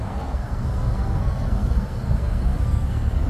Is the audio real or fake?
fake